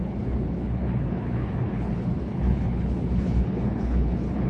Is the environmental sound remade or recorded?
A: remade